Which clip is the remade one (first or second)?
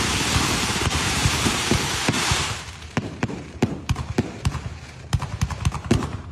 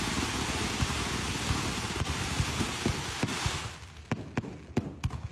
first